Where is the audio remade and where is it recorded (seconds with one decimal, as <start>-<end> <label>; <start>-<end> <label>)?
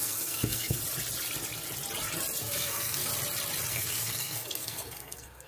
0.0-0.8 remade; 0.8-2.4 recorded; 2.4-3.1 remade; 3.1-3.7 recorded; 3.7-5.5 remade